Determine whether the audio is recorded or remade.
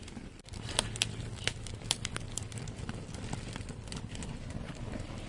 remade